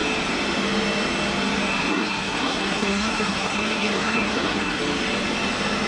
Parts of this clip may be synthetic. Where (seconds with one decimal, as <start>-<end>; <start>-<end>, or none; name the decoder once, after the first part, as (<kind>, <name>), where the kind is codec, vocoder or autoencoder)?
1.9-4.8 (codec, SNAC)